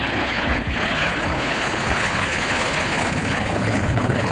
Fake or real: fake